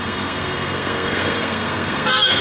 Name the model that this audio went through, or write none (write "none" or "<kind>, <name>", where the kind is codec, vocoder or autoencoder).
codec, SNAC